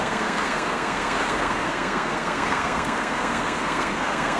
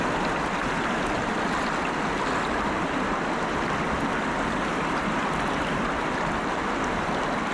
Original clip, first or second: second